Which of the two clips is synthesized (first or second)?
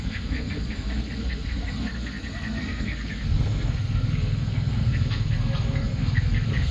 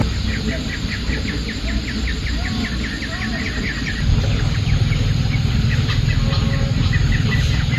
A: first